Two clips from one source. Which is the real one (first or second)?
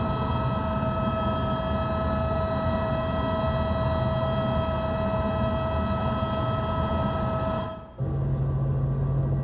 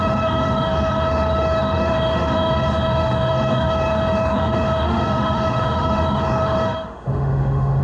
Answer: first